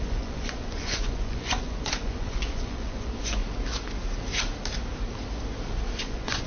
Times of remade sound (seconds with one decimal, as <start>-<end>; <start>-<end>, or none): 0.0-3.4; 6.0-6.5